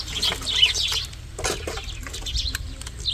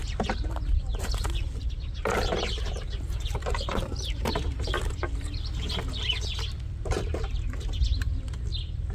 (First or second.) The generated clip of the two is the second